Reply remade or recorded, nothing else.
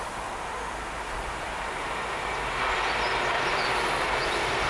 recorded